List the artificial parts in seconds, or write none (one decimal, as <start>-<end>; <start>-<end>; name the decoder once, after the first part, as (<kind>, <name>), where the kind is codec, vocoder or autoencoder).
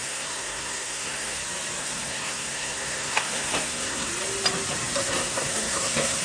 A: 0.0-1.4 (codec, SNAC); 1.8-4.1; 5.0-6.2